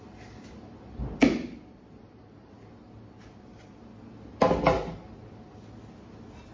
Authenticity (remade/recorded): recorded